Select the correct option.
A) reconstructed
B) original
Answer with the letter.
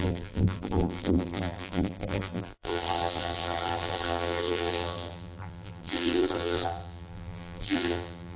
A